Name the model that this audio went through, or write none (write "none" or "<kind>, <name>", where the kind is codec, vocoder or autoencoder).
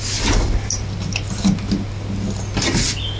none